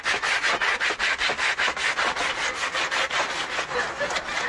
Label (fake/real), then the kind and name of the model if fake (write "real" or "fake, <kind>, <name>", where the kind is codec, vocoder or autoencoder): real